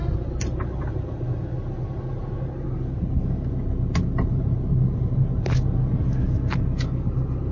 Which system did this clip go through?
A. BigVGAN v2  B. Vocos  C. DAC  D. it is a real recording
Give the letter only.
D